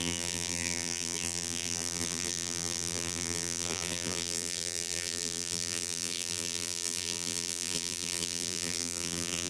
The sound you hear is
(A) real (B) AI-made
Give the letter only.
B